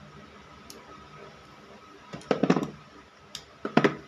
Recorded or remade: recorded